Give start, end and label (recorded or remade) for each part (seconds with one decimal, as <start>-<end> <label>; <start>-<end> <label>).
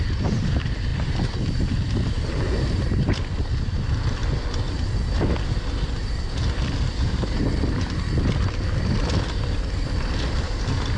0.0-11.0 recorded